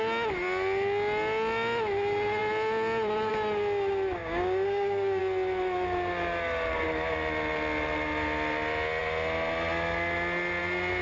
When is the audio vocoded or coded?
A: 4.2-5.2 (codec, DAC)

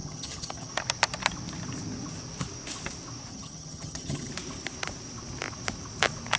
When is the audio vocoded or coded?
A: 0.0-0.7 (vocoder, HiFi-GAN); 3.3-4.3

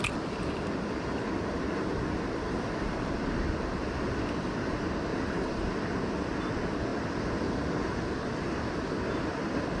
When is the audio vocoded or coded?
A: 2.5-3.1 (vocoder, BigVGAN v2); 5.1-5.7

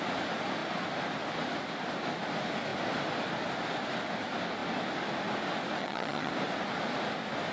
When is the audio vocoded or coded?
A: 5.8-6.3 (vocoder, HiFi-GAN)

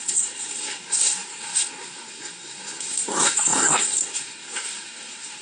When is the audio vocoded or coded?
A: 0.0-5.4 (codec, SNAC)